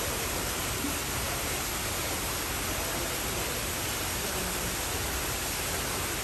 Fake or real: real